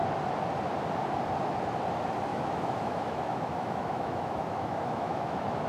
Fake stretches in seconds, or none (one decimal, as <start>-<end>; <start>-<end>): 2.3-5.7